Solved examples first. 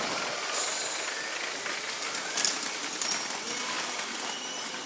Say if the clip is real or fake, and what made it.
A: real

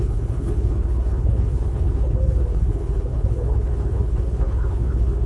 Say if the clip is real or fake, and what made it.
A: fake, codec, HILCodec